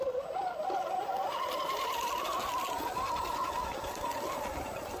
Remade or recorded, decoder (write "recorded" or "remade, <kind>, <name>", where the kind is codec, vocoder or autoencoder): recorded